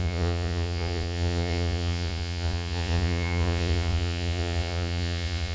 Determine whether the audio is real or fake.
fake